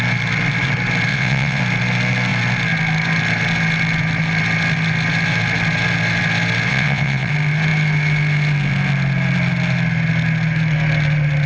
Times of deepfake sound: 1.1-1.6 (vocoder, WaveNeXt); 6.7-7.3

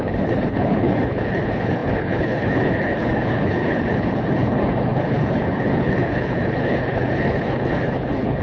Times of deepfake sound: 0.0-8.4 (codec, HILCodec)

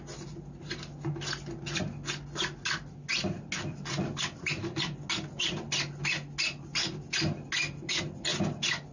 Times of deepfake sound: none

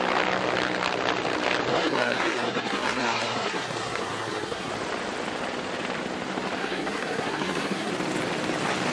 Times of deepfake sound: 1.7-4.7 (codec, SNAC); 6.6-7.9

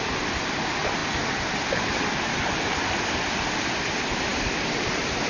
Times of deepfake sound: none